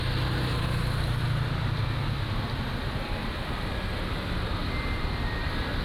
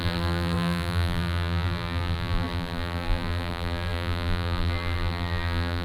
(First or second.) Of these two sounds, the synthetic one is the second